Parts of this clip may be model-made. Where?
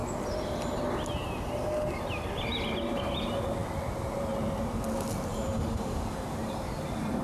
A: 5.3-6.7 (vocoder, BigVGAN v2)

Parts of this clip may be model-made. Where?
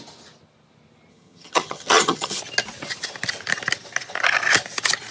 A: 1.1-2.4 (vocoder, HiFi-GAN)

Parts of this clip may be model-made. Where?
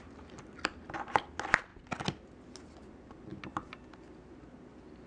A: none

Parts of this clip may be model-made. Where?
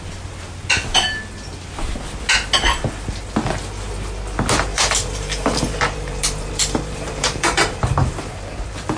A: 4.7-8.4 (vocoder, BigVGAN v2)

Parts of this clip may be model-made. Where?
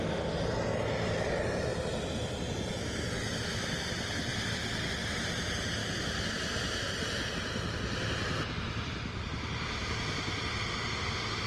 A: 9.8-10.4 (vocoder, BigVGAN v2)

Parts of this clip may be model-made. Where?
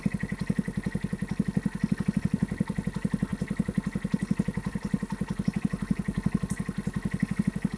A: none